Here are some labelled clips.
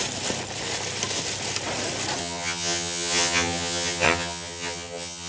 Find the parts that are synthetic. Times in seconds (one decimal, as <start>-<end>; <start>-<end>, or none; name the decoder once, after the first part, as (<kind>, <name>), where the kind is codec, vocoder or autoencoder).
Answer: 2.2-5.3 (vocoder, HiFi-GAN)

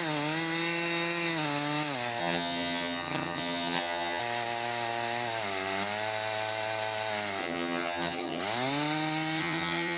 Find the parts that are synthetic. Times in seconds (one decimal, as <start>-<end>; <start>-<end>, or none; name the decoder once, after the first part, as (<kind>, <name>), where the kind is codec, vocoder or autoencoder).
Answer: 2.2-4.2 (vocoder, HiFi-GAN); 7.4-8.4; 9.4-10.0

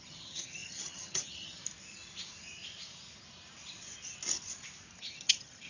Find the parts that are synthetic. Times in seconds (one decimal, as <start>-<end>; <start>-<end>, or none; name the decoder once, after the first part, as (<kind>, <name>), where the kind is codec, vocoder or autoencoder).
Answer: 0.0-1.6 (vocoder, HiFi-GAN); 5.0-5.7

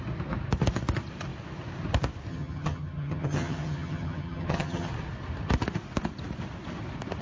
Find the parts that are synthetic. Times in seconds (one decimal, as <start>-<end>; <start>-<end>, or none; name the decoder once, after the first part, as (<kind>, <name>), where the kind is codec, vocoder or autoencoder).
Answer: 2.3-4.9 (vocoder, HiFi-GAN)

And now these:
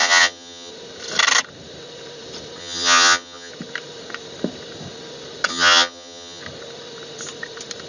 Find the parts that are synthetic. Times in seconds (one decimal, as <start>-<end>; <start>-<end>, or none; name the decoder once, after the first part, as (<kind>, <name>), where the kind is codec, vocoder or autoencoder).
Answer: 0.0-0.7 (vocoder, HiFi-GAN); 2.6-3.5; 5.5-6.4

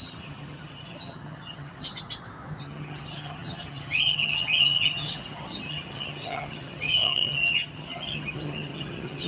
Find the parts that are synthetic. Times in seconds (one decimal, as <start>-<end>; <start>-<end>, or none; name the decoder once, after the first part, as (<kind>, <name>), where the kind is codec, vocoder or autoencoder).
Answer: 0.0-1.9 (vocoder, HiFi-GAN); 2.6-9.3

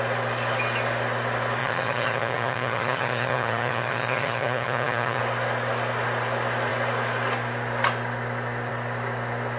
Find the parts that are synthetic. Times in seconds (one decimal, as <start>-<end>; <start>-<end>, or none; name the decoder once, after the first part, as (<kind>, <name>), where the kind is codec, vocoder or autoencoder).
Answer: 1.6-5.2 (vocoder, HiFi-GAN)

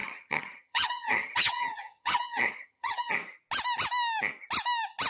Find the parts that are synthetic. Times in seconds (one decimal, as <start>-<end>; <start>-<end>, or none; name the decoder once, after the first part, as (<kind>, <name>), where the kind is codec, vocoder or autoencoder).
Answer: 0.0-3.1 (vocoder, HiFi-GAN)